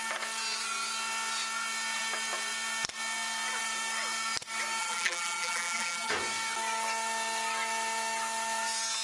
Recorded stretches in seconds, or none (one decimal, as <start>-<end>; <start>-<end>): 0.0-4.8; 6.1-9.0